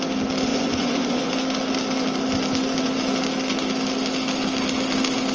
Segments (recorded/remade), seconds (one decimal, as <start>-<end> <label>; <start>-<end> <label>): 0.0-0.5 recorded; 0.5-1.2 remade; 1.2-5.3 recorded